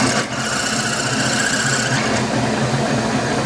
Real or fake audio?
real